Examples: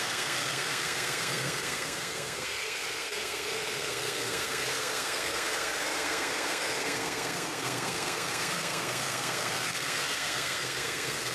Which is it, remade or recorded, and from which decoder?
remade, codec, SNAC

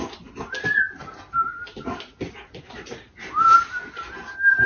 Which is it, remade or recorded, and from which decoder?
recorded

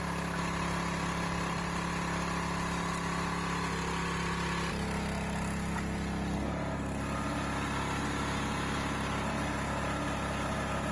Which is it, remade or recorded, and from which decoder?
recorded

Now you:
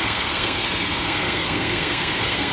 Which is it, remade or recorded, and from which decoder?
remade, codec, SNAC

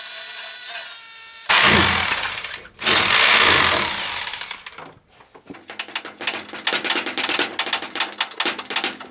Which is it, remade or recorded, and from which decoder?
recorded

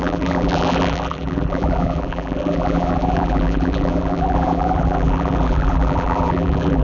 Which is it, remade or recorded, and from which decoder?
remade, vocoder, BigVGAN v2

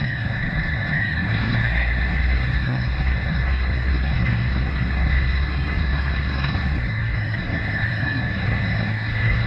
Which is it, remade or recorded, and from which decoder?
remade, codec, SNAC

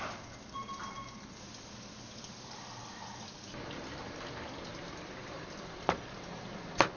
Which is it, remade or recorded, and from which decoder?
recorded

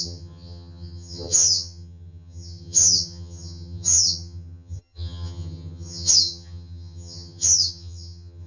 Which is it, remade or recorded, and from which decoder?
remade, vocoder, HiFi-GAN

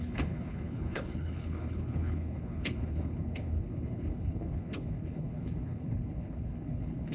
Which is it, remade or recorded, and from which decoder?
remade, codec, HILCodec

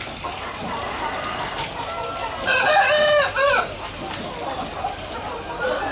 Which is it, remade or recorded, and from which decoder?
recorded